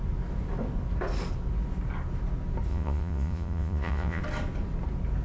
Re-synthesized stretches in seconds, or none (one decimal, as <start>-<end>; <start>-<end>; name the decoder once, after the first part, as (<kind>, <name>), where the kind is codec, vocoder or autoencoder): 2.7-4.2 (vocoder, Vocos)